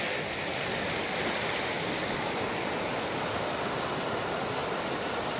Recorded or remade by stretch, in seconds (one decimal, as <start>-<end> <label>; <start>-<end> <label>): 0.0-5.4 recorded